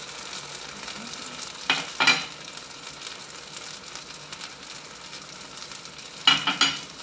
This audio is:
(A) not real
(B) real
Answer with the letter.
B